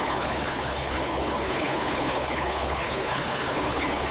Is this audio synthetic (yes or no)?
yes